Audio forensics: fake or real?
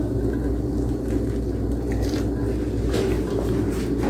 real